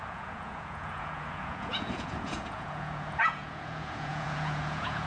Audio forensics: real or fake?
fake